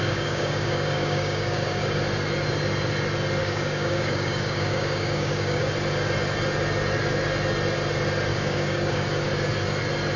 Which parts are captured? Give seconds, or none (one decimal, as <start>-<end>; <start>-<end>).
2.0-3.4; 5.6-8.3; 9.0-10.2